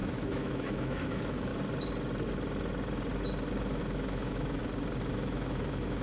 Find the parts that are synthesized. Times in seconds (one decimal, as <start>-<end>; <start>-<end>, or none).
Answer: 0.0-1.5; 3.8-4.6; 5.1-6.0